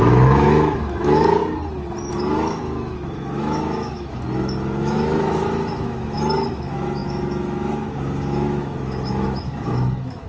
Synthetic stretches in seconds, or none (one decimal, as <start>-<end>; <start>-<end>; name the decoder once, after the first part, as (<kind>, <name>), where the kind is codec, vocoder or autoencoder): 0.0-1.4 (autoencoder, DAC-VAE); 2.1-10.3